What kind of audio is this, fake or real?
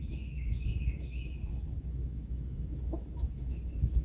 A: fake